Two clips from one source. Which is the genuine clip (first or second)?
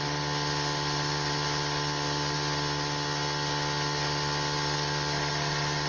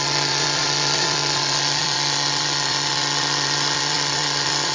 first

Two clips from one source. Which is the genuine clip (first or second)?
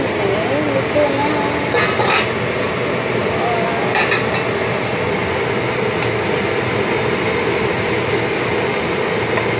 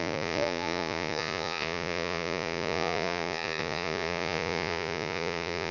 first